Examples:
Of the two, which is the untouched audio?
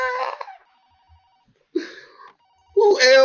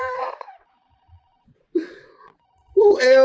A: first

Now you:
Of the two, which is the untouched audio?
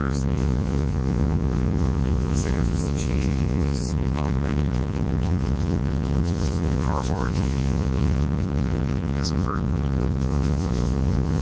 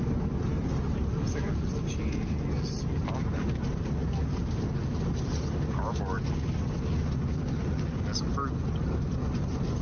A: second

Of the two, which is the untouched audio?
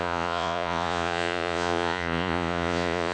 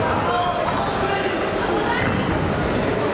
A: second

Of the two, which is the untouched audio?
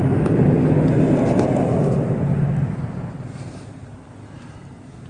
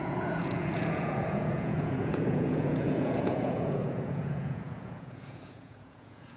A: first